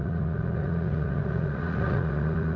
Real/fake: fake